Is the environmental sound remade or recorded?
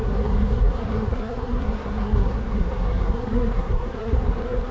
remade